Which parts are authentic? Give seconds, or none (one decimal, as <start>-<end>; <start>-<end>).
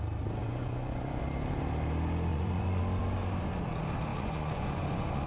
0.0-0.4; 1.2-2.3; 2.8-4.1